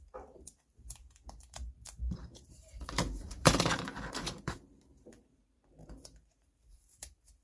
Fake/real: fake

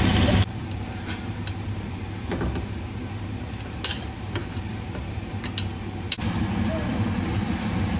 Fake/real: fake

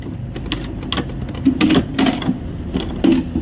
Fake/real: real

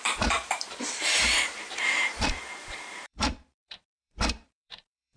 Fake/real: fake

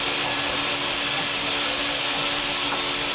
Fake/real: real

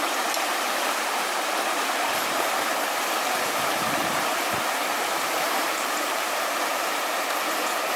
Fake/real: fake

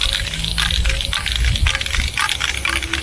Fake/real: real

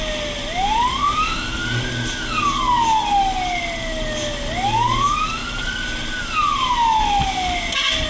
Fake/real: real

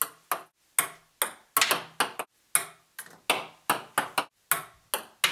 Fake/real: real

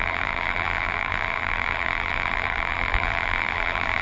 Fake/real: fake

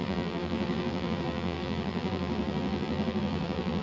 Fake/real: fake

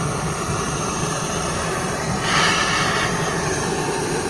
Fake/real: real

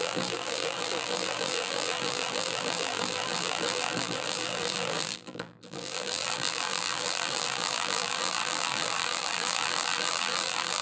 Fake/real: fake